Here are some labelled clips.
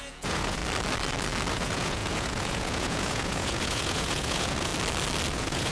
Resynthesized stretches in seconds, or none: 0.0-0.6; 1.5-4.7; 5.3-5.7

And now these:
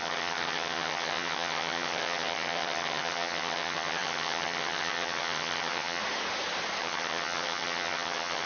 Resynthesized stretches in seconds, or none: 0.0-6.0; 6.8-8.5